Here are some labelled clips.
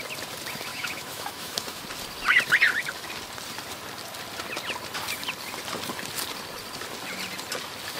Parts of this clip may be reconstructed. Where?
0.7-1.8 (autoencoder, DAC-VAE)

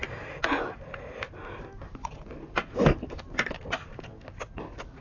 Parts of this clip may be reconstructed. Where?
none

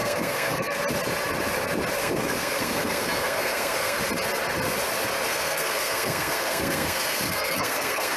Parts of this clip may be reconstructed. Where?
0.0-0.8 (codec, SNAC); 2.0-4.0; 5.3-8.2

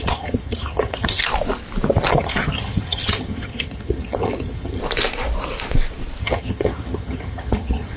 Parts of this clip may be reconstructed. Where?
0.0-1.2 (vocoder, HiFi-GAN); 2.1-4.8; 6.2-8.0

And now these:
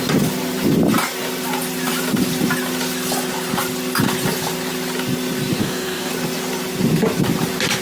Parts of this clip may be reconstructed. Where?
5.6-6.1 (codec, DAC)